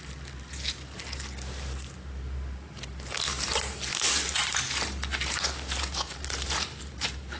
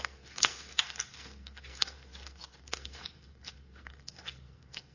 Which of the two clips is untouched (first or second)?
first